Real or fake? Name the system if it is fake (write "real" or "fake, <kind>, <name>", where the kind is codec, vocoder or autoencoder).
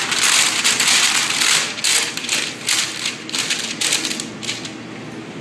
real